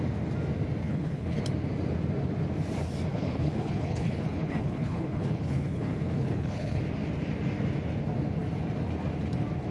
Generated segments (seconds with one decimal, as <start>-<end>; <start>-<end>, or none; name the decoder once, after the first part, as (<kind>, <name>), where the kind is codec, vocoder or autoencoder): 0.8-1.4 (codec, HILCodec); 3.1-6.8